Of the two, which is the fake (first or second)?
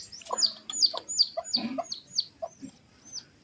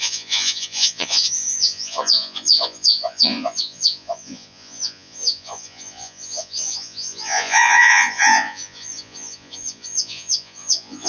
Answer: second